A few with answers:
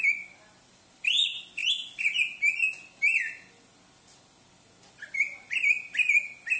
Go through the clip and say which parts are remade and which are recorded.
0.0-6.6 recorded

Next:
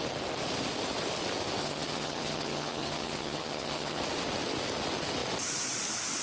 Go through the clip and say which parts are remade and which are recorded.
0.0-1.6 recorded; 1.6-4.0 remade; 4.0-6.2 recorded

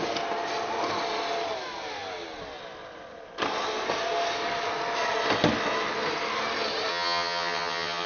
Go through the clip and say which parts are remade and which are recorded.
0.0-6.9 recorded; 6.9-8.1 remade

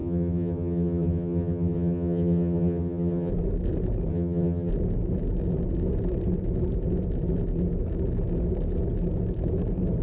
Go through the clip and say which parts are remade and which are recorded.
0.0-3.3 remade; 3.3-4.1 recorded; 4.1-4.7 remade; 4.7-10.0 recorded

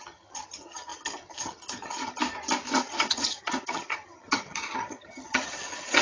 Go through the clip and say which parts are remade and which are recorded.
0.0-2.2 remade; 2.2-2.7 recorded; 2.7-6.0 remade

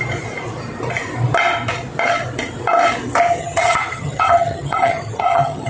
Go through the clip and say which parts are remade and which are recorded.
0.0-3.4 recorded; 3.4-5.7 remade

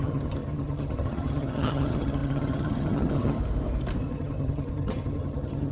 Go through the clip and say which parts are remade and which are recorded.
0.0-3.4 remade; 3.4-4.0 recorded; 4.0-5.7 remade